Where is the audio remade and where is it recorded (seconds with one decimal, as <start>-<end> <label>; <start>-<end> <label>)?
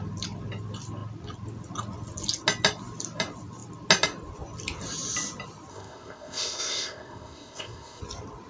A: 0.0-5.7 recorded; 5.7-8.0 remade; 8.0-8.5 recorded